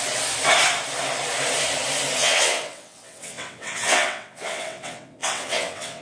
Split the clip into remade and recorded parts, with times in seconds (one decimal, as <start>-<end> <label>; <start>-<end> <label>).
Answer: 0.0-2.2 recorded; 2.2-6.0 remade